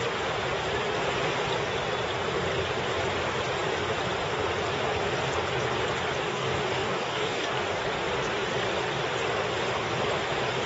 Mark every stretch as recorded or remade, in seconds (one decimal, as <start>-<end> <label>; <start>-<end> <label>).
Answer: 0.0-6.2 recorded; 6.2-7.5 remade; 7.5-10.7 recorded